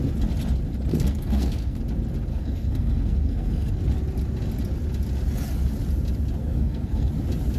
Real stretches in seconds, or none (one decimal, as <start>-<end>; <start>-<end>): 0.0-0.9; 1.8-2.3; 3.7-6.4; 7.1-7.6